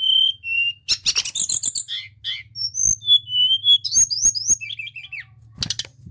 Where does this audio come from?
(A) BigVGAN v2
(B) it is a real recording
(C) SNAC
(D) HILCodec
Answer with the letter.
B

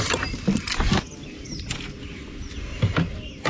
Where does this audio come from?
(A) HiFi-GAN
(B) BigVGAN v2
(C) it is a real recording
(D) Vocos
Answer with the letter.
C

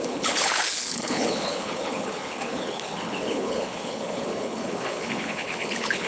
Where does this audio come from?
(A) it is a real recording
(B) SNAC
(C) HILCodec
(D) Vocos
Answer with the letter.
C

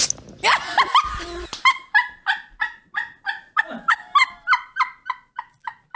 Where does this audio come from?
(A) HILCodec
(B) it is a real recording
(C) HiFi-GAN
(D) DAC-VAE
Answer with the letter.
B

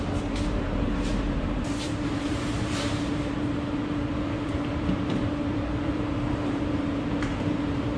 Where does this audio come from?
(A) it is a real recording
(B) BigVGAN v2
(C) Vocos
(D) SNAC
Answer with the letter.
B